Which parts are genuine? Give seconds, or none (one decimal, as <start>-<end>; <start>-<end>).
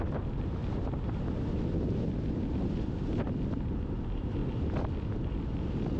0.0-6.0